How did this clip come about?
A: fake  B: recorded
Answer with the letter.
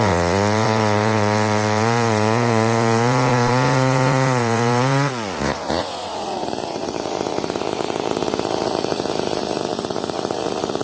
A